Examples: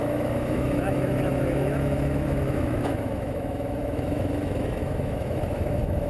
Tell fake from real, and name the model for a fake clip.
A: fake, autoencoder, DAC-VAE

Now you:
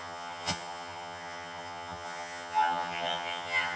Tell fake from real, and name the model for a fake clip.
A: fake, vocoder, HiFi-GAN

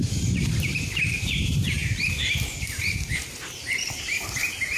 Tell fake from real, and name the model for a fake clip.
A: fake, vocoder, BigVGAN v2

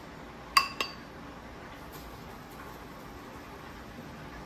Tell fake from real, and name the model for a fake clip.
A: real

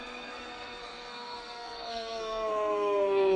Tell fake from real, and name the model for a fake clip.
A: fake, codec, SNAC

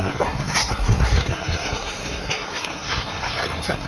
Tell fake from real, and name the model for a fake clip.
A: fake, codec, SNAC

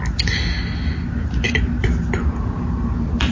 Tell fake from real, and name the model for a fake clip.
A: real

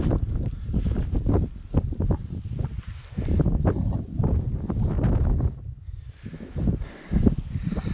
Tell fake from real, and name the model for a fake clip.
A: real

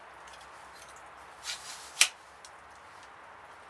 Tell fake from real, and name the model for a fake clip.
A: real